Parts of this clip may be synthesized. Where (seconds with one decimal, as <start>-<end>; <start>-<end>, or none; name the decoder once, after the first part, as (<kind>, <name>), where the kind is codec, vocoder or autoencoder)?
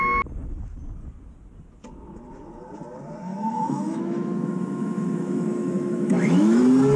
3.3-6.6 (autoencoder, DAC-VAE)